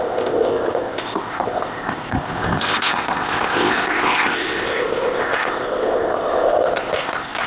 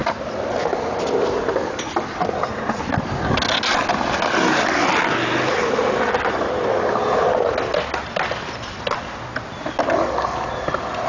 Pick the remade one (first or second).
first